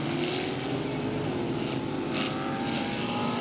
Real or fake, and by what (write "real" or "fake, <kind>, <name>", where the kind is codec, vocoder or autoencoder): real